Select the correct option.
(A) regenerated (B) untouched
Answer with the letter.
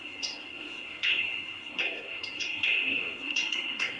A